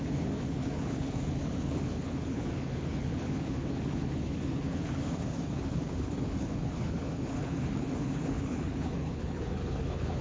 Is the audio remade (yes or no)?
yes